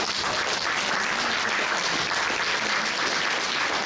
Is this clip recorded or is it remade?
recorded